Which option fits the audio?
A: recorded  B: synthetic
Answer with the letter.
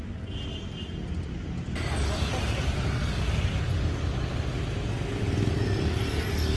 A